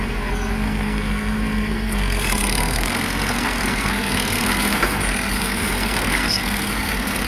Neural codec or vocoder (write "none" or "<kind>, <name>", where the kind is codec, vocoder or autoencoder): codec, SNAC